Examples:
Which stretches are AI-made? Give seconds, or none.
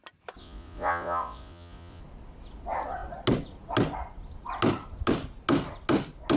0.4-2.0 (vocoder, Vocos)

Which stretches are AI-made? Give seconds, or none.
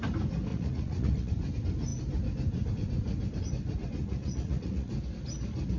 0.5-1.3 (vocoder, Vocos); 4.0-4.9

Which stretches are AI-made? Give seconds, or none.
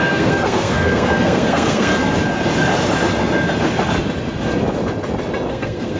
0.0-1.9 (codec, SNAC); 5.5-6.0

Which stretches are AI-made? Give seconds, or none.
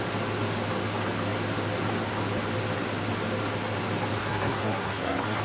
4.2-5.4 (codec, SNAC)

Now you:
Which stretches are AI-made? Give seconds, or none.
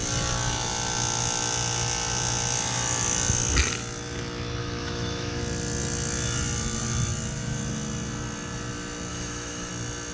4.6-5.4 (autoencoder, DAC-VAE); 9.1-9.7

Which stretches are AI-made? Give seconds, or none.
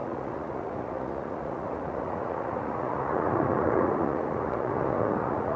0.0-5.6 (vocoder, Vocos)